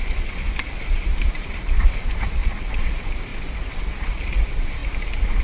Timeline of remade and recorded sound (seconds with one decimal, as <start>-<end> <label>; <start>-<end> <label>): 0.0-2.4 remade; 2.4-2.9 recorded; 2.9-3.3 remade; 3.3-4.2 recorded; 4.2-5.4 remade

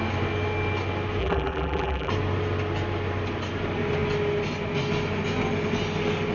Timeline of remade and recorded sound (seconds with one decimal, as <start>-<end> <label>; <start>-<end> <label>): 0.0-1.2 recorded; 1.2-2.1 remade; 2.1-6.3 recorded

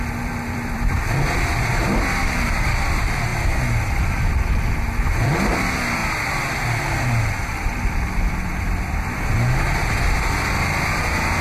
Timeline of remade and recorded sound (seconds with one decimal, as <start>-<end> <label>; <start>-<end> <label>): 0.0-3.3 remade; 3.3-5.1 recorded; 5.1-6.0 remade; 6.0-10.1 recorded; 10.1-11.4 remade

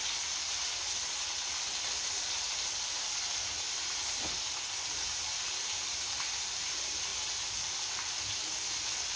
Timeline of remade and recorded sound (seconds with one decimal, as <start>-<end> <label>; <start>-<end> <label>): 0.0-0.8 remade; 0.8-4.9 recorded; 4.9-7.1 remade; 7.1-7.6 recorded; 7.6-9.2 remade

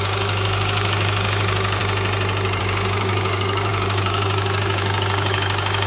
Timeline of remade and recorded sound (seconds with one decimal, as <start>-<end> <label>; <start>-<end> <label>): 0.0-1.8 remade; 1.8-2.6 recorded; 2.6-5.9 remade

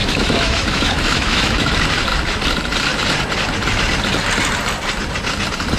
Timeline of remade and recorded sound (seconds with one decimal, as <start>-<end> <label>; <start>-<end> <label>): 0.0-1.7 remade; 1.7-5.8 recorded

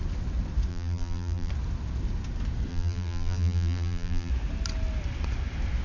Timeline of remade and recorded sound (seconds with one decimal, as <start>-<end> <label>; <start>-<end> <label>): 0.0-0.7 recorded; 0.7-1.5 remade; 1.5-2.7 recorded; 2.7-4.3 remade; 4.3-5.8 recorded